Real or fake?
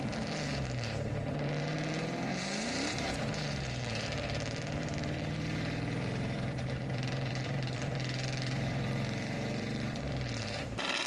fake